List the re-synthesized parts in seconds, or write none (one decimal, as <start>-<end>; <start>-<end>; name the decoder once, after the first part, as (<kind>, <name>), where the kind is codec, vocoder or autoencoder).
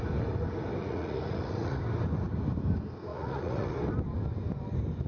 0.8-1.8 (vocoder, Vocos); 3.1-3.7